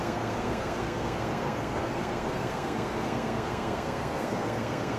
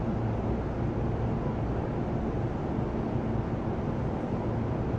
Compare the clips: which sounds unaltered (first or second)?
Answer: second